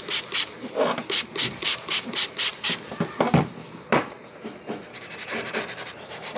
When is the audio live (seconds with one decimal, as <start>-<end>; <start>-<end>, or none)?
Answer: 0.0-4.9; 5.6-6.4